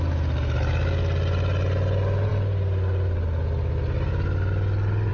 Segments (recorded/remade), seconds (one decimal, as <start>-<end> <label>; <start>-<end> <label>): 0.0-5.1 recorded